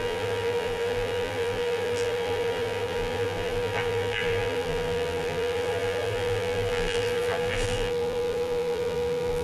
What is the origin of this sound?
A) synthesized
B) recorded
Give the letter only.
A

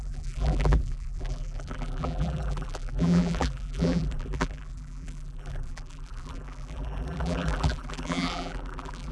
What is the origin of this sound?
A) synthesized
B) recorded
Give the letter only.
A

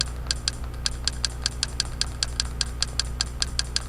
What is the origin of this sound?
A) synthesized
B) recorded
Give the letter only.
B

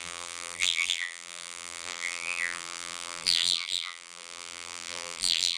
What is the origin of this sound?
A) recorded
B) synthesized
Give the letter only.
B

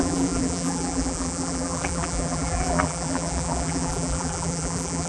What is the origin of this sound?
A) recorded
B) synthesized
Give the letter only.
B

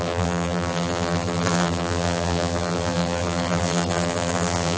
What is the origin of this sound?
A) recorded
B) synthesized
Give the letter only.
B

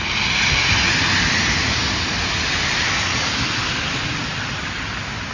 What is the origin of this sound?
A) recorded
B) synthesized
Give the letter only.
A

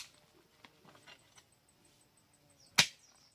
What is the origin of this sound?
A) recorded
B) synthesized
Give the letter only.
A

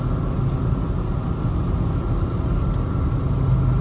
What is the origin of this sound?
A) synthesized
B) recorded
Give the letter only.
B